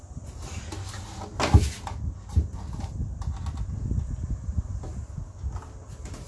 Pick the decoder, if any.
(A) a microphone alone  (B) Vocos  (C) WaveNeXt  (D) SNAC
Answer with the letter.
A